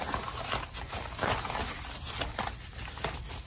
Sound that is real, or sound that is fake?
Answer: real